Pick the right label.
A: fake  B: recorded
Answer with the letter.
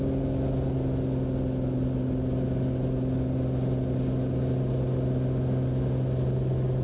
B